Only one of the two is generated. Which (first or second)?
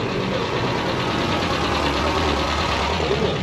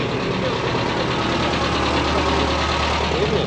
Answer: first